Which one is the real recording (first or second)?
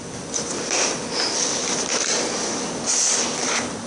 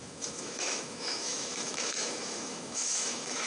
first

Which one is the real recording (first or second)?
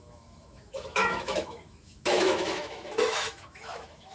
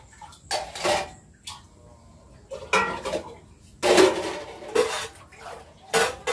second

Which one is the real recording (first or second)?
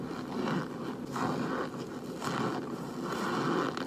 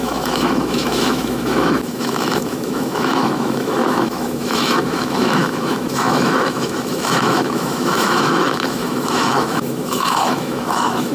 first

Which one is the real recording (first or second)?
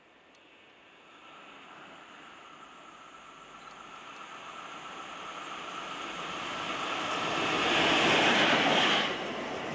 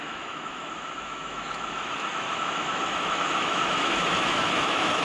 first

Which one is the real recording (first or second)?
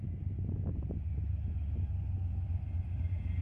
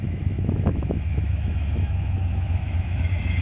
first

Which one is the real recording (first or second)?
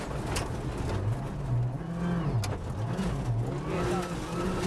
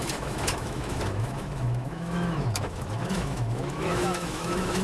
first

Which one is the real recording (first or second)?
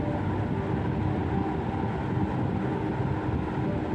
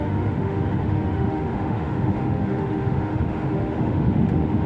first